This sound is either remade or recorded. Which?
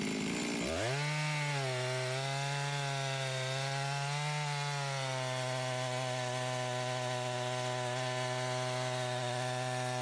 recorded